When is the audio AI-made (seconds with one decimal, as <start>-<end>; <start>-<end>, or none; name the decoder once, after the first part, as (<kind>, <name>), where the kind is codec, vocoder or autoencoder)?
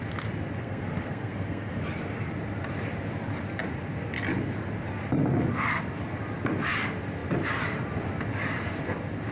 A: 0.6-1.8 (codec, SNAC)